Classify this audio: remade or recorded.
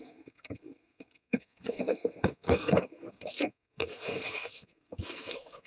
remade